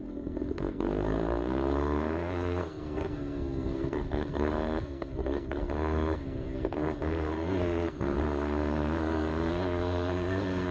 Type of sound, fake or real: fake